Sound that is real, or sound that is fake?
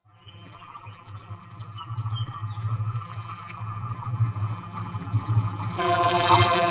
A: fake